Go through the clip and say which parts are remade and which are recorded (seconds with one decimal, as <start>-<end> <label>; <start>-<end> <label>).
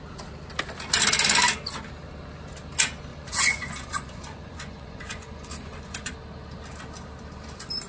0.0-3.1 recorded; 3.1-6.1 remade; 6.1-7.9 recorded